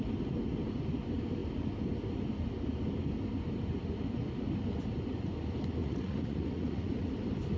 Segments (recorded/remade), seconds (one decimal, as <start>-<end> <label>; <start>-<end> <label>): 0.0-5.8 recorded; 5.8-7.1 remade; 7.1-7.6 recorded

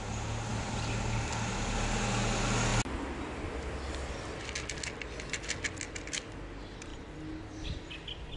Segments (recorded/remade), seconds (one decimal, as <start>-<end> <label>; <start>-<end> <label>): 0.0-8.4 recorded

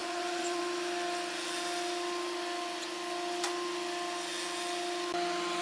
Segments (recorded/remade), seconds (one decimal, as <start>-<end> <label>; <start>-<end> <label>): 0.0-0.6 remade; 0.6-5.6 recorded

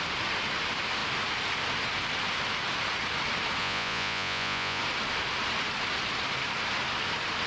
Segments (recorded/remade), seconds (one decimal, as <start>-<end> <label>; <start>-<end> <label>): 0.0-3.6 recorded; 3.6-4.8 remade; 4.8-7.5 recorded

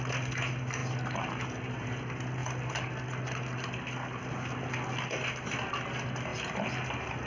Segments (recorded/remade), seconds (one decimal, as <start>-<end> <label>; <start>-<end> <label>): 0.0-7.3 recorded

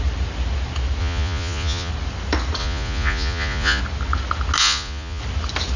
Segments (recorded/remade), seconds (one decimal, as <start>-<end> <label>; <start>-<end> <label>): 0.0-1.0 recorded; 1.0-1.9 remade; 1.9-2.6 recorded; 2.6-3.8 remade; 3.8-4.6 recorded; 4.6-5.2 remade; 5.2-5.8 recorded